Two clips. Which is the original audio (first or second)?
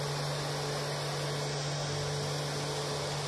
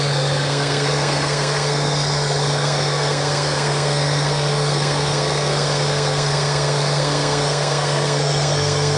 first